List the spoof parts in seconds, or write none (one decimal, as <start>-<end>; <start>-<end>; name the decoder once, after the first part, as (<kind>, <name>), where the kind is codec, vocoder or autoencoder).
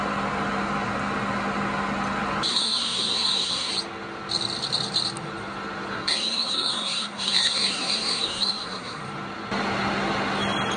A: 2.5-3.7 (codec, SNAC); 5.9-9.0